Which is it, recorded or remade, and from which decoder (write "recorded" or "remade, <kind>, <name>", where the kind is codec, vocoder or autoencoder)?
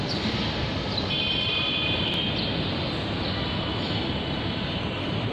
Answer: recorded